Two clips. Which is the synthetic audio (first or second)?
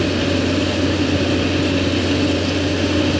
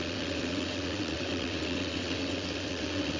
second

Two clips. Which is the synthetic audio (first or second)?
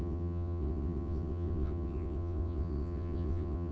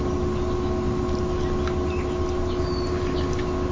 first